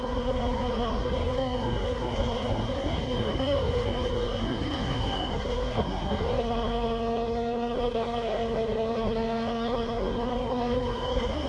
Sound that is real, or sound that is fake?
fake